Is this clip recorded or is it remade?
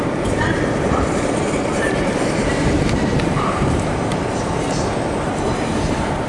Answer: remade